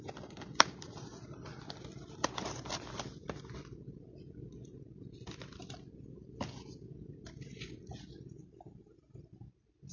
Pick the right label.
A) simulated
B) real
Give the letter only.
A